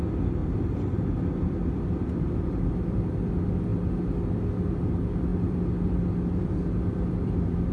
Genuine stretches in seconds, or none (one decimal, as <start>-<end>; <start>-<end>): 0.0-0.4; 3.3-5.3